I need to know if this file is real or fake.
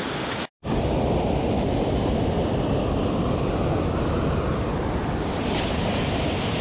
real